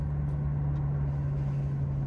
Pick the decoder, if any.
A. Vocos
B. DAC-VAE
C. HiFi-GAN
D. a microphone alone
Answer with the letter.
D